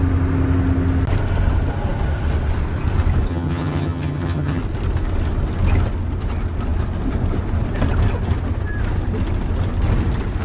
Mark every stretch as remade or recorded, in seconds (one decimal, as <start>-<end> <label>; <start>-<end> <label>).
0.0-3.3 recorded; 3.3-4.6 remade; 4.6-10.4 recorded

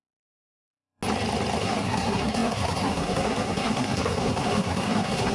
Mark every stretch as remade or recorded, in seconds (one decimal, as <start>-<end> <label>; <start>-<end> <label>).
0.0-1.0 remade; 1.0-1.6 recorded; 1.6-5.3 remade

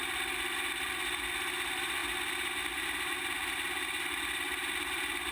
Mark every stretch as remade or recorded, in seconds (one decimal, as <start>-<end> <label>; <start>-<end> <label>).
0.0-5.3 recorded

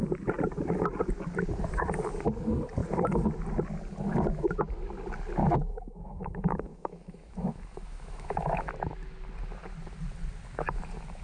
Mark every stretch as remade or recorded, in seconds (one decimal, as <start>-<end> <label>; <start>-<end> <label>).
0.0-5.4 recorded; 5.4-8.7 remade; 8.7-11.2 recorded

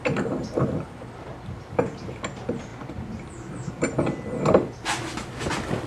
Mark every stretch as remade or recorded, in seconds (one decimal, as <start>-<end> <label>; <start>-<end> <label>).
0.0-5.9 recorded